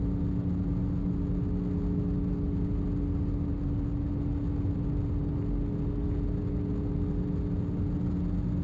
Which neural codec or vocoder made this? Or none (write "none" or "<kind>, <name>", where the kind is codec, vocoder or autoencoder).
none